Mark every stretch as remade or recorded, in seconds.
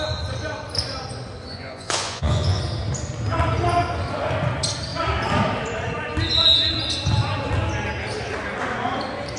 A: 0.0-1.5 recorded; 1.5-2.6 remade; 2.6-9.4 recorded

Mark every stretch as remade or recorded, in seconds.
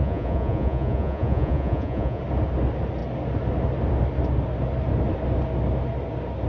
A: 0.0-2.2 remade; 2.2-6.5 recorded